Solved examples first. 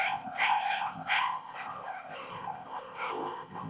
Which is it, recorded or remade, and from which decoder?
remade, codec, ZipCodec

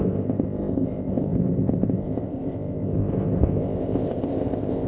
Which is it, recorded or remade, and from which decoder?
remade, codec, ZipCodec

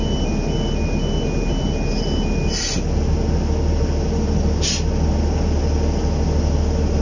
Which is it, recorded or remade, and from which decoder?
recorded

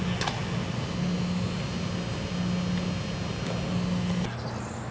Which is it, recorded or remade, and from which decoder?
recorded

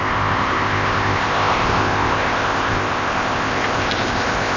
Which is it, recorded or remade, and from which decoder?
remade, codec, ZipCodec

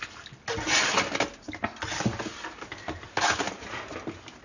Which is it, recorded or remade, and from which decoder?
recorded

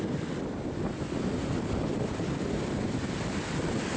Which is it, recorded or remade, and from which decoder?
recorded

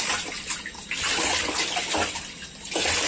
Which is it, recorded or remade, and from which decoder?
recorded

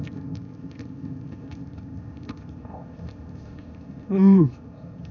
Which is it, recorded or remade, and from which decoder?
remade, codec, ZipCodec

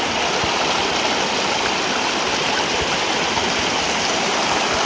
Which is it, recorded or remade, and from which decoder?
recorded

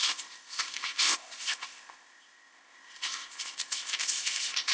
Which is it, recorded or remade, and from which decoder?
remade, codec, ZipCodec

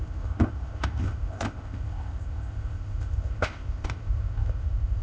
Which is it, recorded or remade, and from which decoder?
remade, codec, ZipCodec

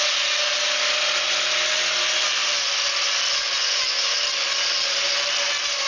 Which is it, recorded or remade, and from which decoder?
recorded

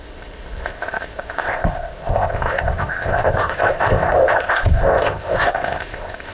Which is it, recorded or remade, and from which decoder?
remade, codec, ZipCodec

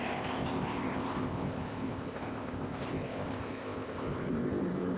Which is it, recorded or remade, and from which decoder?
remade, codec, ZipCodec